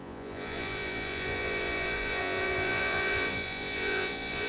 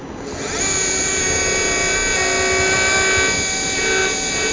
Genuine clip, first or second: second